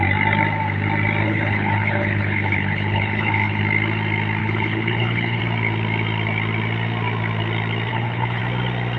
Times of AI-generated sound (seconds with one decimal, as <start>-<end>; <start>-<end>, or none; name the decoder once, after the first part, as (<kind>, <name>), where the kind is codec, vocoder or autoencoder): 1.2-3.6 (codec, HILCodec); 4.4-5.4; 7.9-8.4